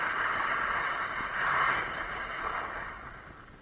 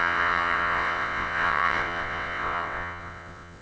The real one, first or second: first